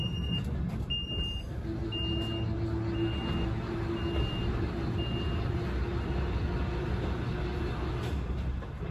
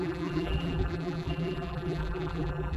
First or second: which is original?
first